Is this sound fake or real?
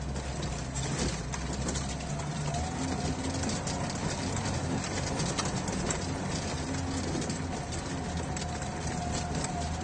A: real